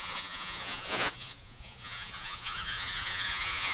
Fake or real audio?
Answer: fake